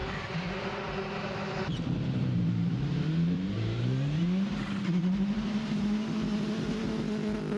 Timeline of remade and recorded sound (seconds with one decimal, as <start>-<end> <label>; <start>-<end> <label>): 0.0-2.2 recorded; 2.2-6.1 remade; 6.1-7.6 recorded